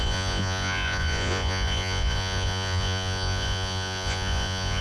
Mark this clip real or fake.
fake